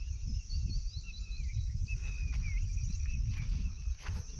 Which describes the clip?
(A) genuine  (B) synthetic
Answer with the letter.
A